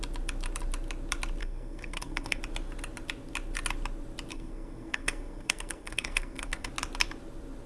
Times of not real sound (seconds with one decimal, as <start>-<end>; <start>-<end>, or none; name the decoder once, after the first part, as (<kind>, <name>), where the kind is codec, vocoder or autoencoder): 1.4-2.4 (codec, SNAC); 4.3-6.7